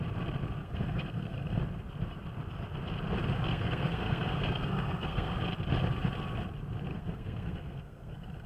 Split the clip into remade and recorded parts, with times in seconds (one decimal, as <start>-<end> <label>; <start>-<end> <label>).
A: 0.0-0.6 recorded; 0.6-1.6 remade; 1.6-3.5 recorded; 3.5-5.4 remade; 5.4-6.9 recorded; 6.9-8.5 remade